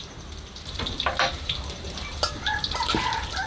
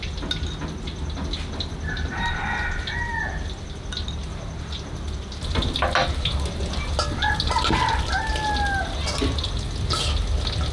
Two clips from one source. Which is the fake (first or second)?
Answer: first